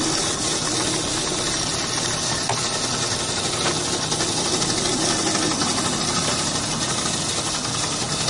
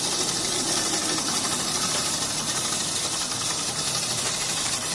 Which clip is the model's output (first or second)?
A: second